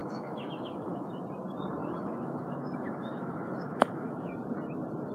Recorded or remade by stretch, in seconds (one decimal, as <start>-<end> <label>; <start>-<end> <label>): 0.0-1.2 remade; 1.2-1.8 recorded; 1.8-4.3 remade; 4.3-5.1 recorded